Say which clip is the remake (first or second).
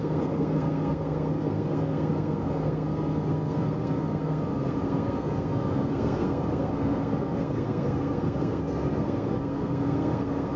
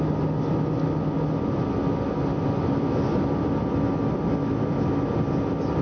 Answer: first